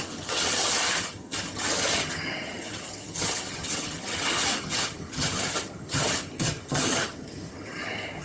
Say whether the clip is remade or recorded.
remade